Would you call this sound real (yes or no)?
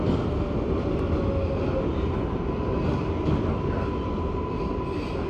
yes